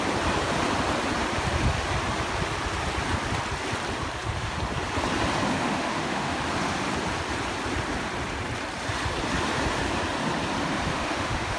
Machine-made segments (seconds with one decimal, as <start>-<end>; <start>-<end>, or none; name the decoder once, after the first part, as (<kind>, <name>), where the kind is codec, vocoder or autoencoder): 5.5-6.4 (autoencoder, DAC-VAE); 10.9-11.6